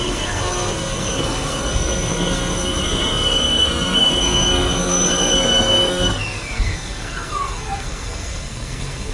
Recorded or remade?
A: remade